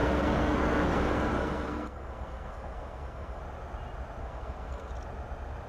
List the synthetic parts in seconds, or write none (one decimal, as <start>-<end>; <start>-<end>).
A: 0.0-3.4; 4.2-4.9